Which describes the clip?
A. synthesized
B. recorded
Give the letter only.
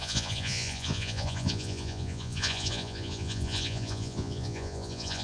A